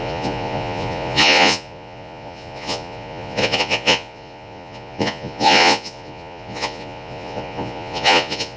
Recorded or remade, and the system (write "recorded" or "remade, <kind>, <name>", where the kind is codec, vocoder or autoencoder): remade, vocoder, Vocos